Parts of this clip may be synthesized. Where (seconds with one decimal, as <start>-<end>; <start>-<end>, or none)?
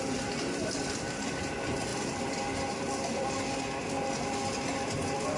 0.0-5.4